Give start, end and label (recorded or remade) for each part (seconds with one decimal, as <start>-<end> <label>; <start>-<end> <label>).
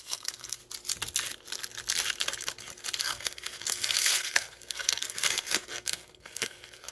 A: 0.0-0.6 remade; 0.6-3.0 recorded; 3.0-6.9 remade